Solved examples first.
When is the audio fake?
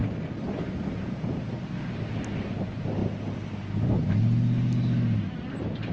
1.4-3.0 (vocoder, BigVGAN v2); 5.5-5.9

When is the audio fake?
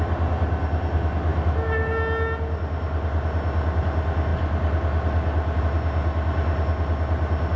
none